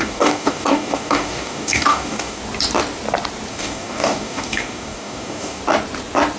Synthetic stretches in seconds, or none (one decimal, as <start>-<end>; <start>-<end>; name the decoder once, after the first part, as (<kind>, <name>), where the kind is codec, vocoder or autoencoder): 0.0-2.4 (codec, DAC); 3.5-5.6

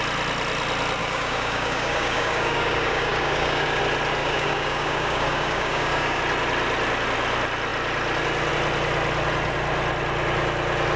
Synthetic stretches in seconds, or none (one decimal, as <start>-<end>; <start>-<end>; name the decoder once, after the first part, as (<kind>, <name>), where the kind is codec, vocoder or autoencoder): 1.0-3.8 (codec, DAC); 4.2-6.2

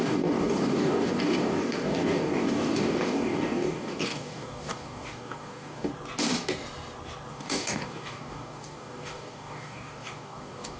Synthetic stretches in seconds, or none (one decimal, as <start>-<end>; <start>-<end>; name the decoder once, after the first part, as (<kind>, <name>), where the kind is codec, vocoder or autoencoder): 0.0-5.9 (codec, DAC); 7.3-10.8

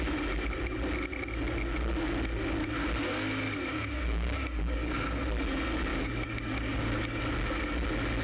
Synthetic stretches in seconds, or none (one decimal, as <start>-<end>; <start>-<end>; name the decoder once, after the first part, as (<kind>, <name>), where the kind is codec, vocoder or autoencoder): 3.7-5.2 (codec, DAC); 5.9-7.2

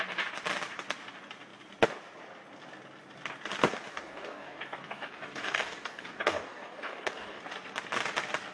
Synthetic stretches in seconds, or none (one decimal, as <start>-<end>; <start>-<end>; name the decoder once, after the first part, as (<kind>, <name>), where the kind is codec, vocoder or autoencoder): 3.9-7.4 (codec, DAC)

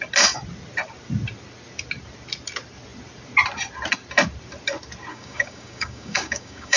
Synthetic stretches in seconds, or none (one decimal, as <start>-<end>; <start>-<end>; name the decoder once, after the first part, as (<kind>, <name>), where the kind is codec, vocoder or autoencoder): 5.1-6.8 (codec, DAC)

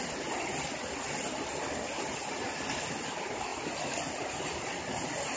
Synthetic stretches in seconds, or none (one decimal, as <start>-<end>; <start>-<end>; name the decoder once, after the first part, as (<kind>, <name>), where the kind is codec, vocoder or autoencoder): none

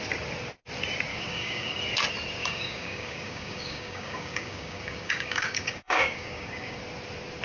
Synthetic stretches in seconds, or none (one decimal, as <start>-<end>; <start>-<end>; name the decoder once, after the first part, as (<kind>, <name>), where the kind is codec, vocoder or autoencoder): 1.1-1.8 (codec, DAC); 2.4-6.8